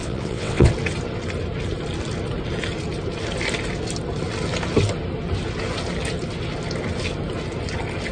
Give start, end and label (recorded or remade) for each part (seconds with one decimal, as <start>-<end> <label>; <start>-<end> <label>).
0.0-0.7 remade; 0.7-8.1 recorded